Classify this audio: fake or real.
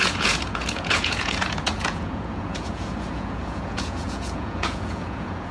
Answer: fake